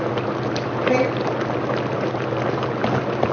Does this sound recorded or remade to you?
recorded